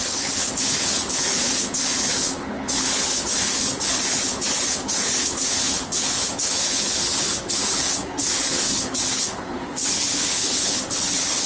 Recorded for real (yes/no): no